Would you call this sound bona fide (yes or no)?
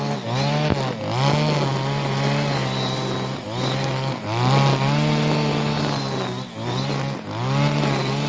yes